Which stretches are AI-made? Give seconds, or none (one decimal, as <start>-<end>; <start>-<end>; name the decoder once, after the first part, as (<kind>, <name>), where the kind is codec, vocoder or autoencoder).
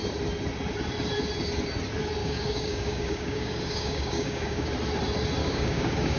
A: 2.2-4.7 (codec, DAC); 5.4-6.2